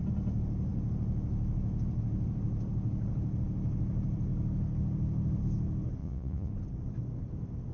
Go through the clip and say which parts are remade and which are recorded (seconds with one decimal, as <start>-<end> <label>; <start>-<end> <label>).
0.0-6.0 recorded; 6.0-6.5 remade; 6.5-7.7 recorded